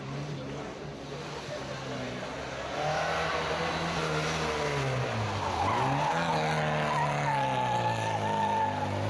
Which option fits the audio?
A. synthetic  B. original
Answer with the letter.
B